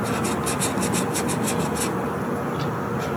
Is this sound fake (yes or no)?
no